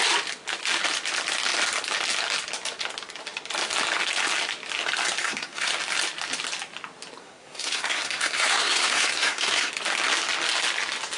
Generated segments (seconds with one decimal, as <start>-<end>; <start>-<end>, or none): 5.2-5.7; 7.2-9.7